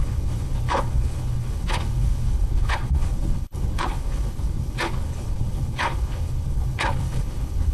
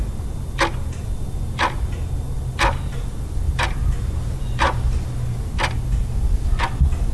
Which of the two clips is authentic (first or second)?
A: second